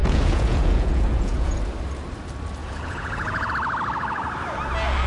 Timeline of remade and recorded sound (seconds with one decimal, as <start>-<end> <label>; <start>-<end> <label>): 0.0-1.6 remade; 1.6-2.6 recorded; 2.6-3.5 remade; 3.5-5.1 recorded